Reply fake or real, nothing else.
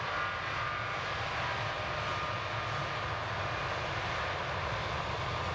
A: real